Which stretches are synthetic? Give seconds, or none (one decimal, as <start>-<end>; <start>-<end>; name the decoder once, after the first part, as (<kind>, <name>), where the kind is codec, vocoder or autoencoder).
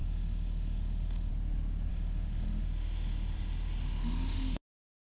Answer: 0.0-1.3 (autoencoder, DAC-VAE); 1.9-4.6